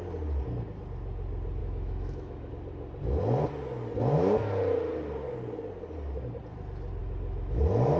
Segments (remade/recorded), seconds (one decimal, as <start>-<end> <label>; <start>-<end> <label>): 0.0-1.6 recorded; 1.6-2.5 remade; 2.5-7.0 recorded; 7.0-7.6 remade; 7.6-8.0 recorded